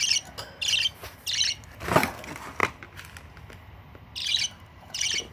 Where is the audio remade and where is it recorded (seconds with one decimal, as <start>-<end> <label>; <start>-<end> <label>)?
0.0-4.2 recorded; 4.2-5.3 remade